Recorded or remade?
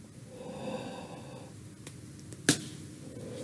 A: recorded